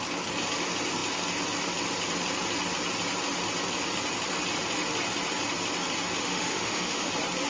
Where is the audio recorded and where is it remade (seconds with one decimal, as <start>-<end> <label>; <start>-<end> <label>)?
0.0-6.2 recorded; 6.2-7.1 remade; 7.1-7.5 recorded